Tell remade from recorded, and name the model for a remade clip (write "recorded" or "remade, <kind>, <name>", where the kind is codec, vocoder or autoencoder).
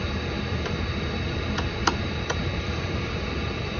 remade, vocoder, BigVGAN v2